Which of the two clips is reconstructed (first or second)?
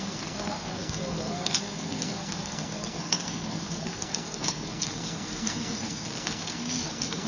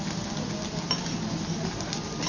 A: first